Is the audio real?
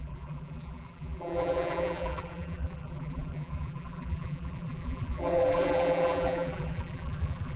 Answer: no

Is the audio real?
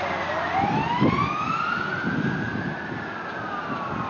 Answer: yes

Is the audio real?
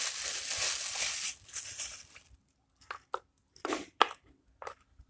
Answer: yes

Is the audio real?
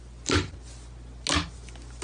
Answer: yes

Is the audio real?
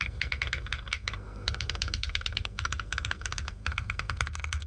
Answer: no